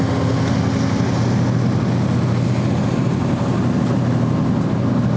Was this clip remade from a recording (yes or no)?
no